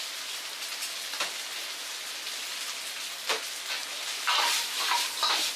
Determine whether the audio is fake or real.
real